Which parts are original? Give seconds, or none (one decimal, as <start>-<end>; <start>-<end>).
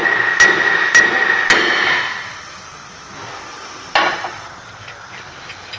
0.0-2.0; 2.7-4.1